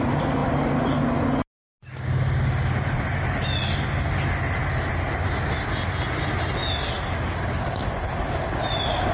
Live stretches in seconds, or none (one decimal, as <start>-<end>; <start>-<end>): 0.0-9.1